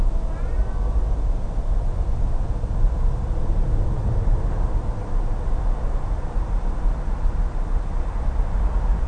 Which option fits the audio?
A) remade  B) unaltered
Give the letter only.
B